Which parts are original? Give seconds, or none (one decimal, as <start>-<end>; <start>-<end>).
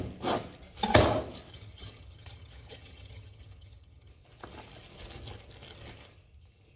0.0-1.5; 4.1-6.8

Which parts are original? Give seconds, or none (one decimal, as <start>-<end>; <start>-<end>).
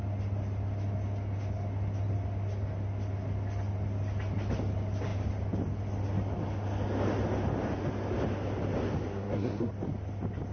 0.0-9.1; 9.7-10.5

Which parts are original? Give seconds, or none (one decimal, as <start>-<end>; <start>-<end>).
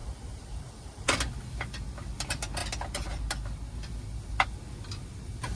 0.0-5.6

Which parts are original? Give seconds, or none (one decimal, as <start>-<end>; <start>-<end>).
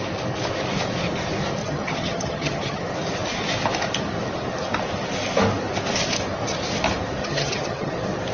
0.0-1.6; 2.8-7.2; 7.9-8.3